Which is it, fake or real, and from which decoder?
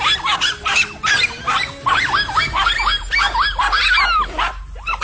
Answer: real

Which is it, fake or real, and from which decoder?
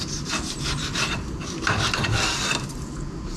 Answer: real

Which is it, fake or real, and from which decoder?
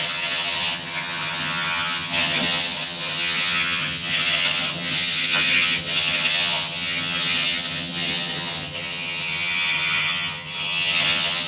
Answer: fake, vocoder, HiFi-GAN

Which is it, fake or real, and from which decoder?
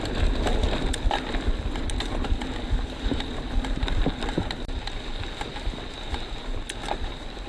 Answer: real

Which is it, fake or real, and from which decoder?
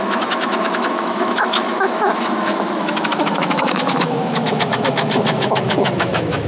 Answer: fake, autoencoder, DAC-VAE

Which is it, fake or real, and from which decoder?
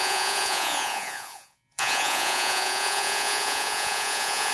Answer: fake, vocoder, Vocos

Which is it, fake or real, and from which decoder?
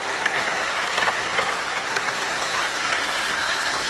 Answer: fake, codec, SNAC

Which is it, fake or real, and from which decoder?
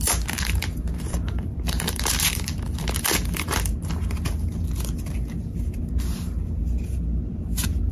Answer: fake, vocoder, BigVGAN v2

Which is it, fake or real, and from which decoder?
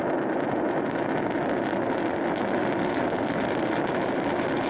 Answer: real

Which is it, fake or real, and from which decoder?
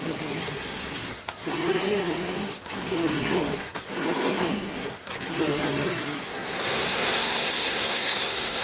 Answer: fake, codec, SNAC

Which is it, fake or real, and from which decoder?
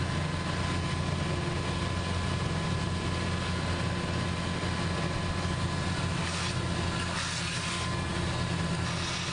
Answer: real